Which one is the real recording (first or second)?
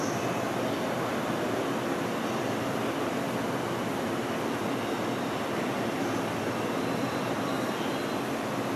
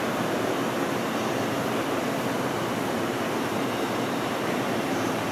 first